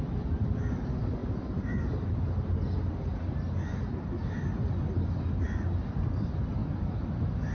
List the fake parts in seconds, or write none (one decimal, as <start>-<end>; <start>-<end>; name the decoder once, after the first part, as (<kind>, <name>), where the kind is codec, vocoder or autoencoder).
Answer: none